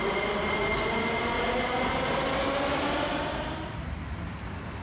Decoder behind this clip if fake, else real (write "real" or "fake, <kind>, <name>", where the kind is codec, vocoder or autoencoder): real